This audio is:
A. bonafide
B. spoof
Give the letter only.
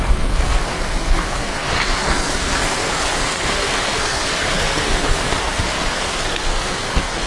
B